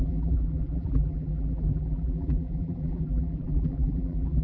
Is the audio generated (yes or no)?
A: yes